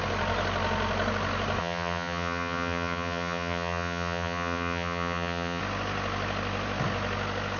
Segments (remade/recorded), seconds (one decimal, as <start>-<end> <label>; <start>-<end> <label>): 0.0-1.6 recorded; 1.6-5.6 remade; 5.6-7.6 recorded